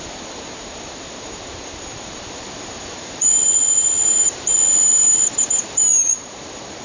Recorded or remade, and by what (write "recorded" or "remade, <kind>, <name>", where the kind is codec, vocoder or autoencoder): remade, vocoder, BigVGAN v2